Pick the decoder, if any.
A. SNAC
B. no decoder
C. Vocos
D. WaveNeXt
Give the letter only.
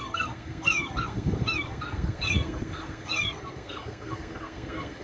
A